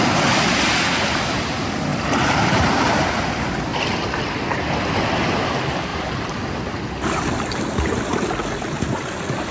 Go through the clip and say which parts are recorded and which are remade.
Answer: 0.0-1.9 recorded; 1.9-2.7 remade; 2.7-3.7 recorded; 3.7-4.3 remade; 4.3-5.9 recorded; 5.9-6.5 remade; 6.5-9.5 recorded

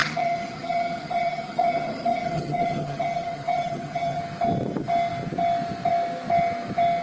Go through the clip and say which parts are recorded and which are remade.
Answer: 0.0-4.2 remade; 4.2-7.0 recorded

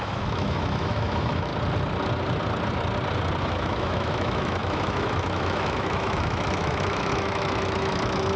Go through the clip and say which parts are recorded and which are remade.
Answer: 0.0-1.5 remade; 1.5-3.4 recorded; 3.4-8.4 remade

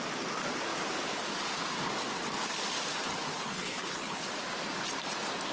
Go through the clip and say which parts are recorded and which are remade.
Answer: 0.0-3.3 recorded; 3.3-4.3 remade; 4.3-5.5 recorded